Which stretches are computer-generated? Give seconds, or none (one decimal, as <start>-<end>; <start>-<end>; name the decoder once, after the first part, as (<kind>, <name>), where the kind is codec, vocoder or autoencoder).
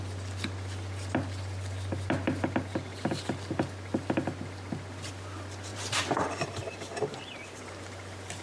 5.7-7.7 (vocoder, BigVGAN v2)